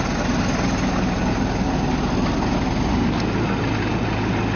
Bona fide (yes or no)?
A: yes